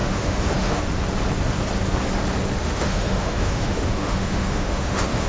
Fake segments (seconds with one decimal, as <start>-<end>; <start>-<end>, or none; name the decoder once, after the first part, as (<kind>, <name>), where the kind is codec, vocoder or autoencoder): 0.0-0.8 (autoencoder, DAC-VAE); 2.6-5.3